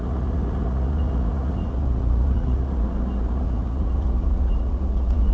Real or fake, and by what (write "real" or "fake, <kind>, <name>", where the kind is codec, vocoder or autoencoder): fake, vocoder, Vocos